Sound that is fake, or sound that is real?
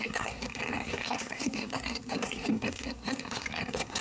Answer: fake